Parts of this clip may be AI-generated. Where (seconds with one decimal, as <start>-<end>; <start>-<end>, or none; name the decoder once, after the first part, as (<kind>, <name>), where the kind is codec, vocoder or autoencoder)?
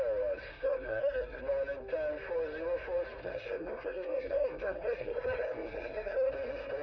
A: 0.5-1.4 (codec, SNAC); 3.2-6.3